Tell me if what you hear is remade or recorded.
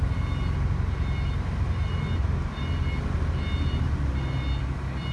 recorded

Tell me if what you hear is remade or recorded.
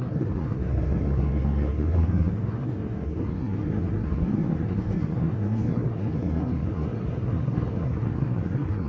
remade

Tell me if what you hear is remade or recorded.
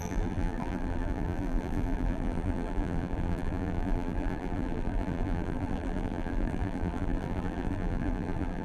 remade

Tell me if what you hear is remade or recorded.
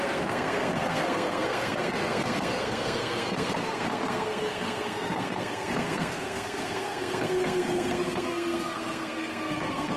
remade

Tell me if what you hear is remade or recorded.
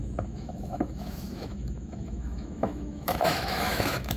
remade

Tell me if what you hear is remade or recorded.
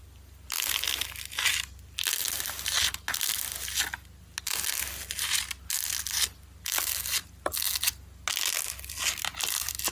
recorded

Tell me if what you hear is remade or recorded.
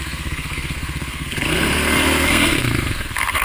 remade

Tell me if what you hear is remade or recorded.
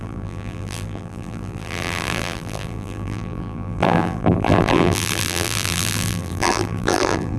remade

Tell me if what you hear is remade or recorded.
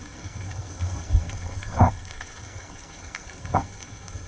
remade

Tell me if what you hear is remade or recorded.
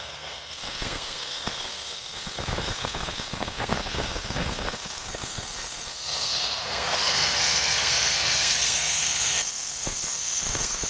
remade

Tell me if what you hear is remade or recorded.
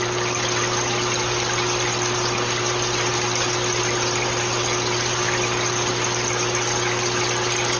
remade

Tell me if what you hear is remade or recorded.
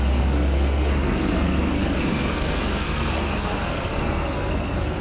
remade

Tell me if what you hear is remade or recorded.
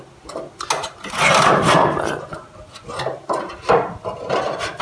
recorded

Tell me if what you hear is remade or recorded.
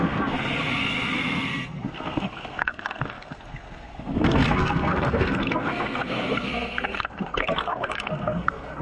remade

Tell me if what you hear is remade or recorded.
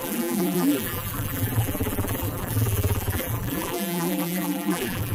remade